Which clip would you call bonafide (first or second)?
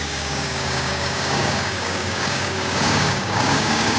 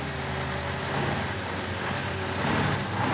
second